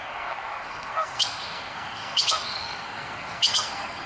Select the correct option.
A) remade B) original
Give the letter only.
A